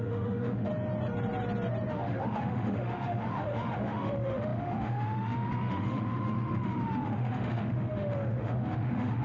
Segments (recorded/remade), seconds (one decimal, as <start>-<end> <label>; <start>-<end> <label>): 0.0-0.7 remade; 0.7-1.9 recorded; 1.9-9.2 remade